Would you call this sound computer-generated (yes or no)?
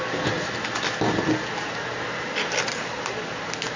no